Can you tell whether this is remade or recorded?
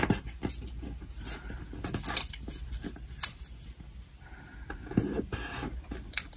recorded